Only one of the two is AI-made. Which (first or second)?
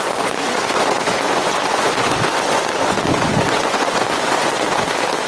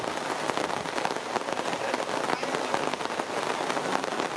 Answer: first